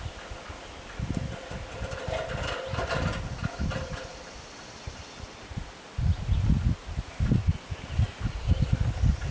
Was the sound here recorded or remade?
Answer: recorded